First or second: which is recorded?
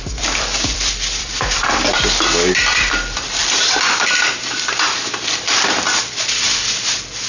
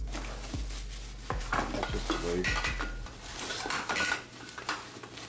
second